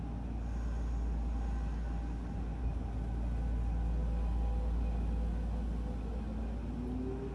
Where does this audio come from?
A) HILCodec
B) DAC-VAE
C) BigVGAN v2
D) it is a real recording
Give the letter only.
D